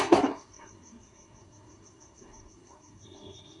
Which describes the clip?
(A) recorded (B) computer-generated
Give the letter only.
B